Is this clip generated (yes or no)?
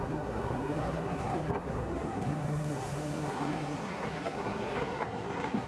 yes